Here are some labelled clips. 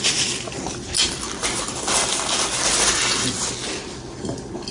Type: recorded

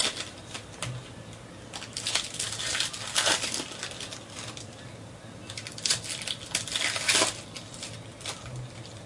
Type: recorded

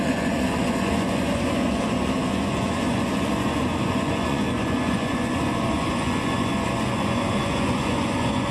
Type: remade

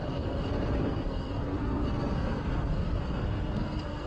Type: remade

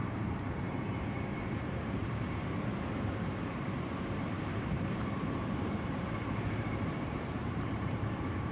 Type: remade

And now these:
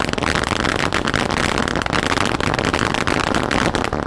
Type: recorded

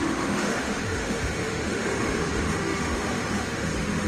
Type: remade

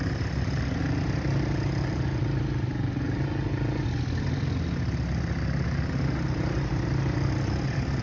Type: recorded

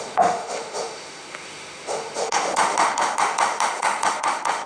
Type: remade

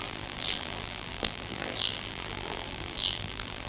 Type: remade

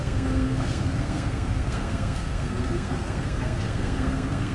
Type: remade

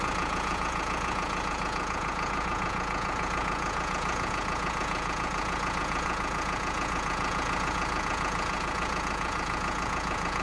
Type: remade